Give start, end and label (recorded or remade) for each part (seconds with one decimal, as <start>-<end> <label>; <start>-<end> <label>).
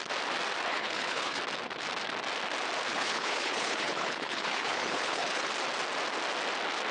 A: 0.0-0.7 recorded; 0.7-1.4 remade; 1.4-2.9 recorded; 2.9-5.5 remade; 5.5-6.9 recorded